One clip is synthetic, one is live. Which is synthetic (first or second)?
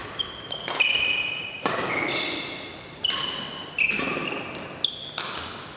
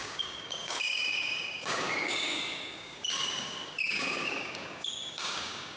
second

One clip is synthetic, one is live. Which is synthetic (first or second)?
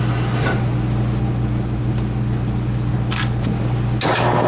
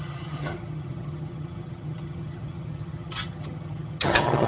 second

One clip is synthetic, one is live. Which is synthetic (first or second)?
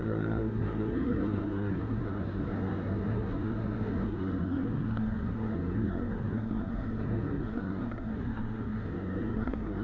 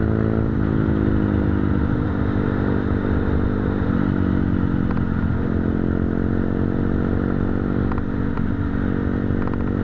first